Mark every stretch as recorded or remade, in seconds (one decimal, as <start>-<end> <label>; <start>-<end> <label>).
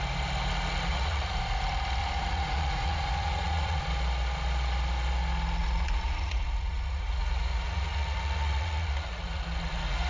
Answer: 0.0-0.9 recorded; 0.9-1.4 remade; 1.4-2.0 recorded; 2.0-3.8 remade; 3.8-5.6 recorded; 5.6-9.4 remade; 9.4-10.1 recorded